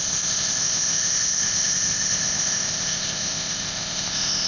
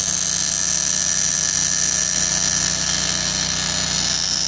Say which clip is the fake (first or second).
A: first